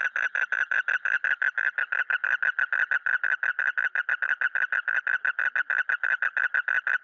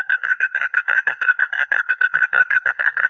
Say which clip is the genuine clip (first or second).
first